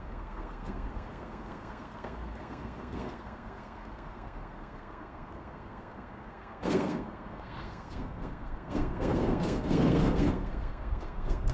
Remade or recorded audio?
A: remade